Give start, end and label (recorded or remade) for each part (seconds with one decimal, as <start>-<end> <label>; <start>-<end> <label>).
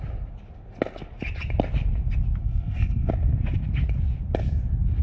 0.0-2.4 recorded; 2.4-3.1 remade; 3.1-5.0 recorded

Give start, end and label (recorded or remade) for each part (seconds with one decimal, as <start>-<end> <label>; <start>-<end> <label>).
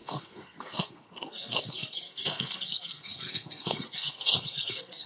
0.0-5.1 remade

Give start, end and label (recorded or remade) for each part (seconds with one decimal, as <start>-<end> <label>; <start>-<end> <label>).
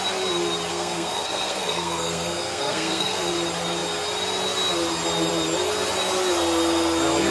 0.0-0.7 recorded; 0.7-3.3 remade; 3.3-7.3 recorded